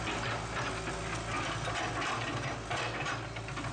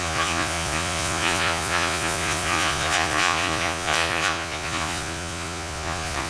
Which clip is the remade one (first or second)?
second